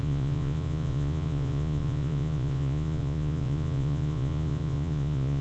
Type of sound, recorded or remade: remade